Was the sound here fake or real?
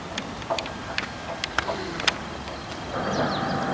real